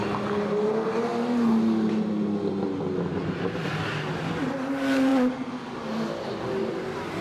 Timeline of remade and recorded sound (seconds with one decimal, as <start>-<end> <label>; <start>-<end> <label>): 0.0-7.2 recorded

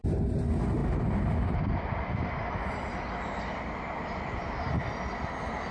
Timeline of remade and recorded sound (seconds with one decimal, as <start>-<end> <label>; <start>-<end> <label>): 0.0-5.7 recorded

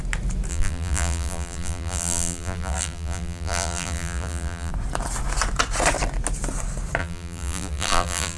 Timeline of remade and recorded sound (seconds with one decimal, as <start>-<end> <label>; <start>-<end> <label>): 0.0-0.5 recorded; 0.5-4.7 remade; 4.7-7.0 recorded; 7.0-8.4 remade